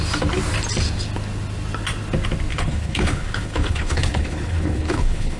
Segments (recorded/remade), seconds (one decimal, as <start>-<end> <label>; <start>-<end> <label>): 0.0-2.5 recorded; 2.5-5.4 remade